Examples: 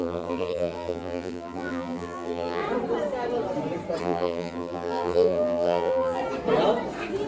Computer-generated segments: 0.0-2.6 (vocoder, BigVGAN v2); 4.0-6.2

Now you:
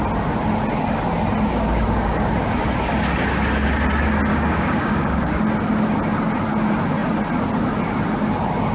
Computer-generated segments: 1.5-2.3 (codec, DAC); 4.3-5.4

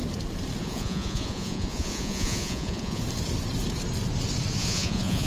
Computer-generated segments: 0.6-3.0 (vocoder, Vocos); 4.6-5.3